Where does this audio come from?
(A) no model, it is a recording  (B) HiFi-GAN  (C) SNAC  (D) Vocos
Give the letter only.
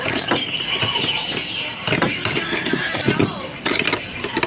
A